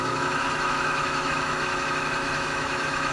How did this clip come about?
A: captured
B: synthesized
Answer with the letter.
B